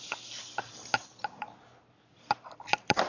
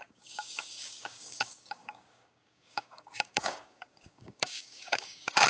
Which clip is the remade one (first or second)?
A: second